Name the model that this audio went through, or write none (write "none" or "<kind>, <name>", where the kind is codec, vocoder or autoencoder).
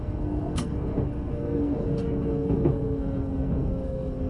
codec, SNAC